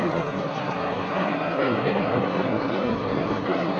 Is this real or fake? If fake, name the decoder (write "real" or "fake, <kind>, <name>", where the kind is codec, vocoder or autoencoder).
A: fake, codec, SNAC